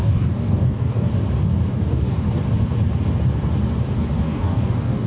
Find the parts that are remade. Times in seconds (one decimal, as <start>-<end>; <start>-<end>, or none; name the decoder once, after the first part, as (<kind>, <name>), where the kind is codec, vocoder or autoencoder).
0.0-1.1 (codec, DAC); 1.7-2.4; 4.2-5.1